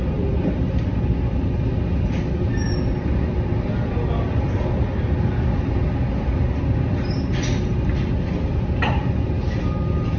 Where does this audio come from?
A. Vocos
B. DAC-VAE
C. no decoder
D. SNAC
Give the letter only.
C